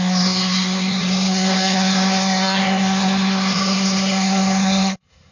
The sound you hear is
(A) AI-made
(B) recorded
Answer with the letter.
A